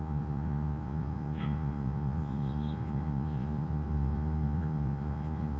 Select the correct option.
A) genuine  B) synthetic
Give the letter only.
B